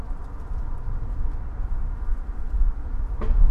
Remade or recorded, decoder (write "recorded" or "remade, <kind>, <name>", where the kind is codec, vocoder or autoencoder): recorded